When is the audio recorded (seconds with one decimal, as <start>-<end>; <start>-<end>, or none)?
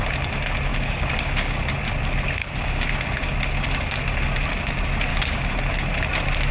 0.0-0.7; 1.7-2.4; 3.0-5.1; 5.6-6.5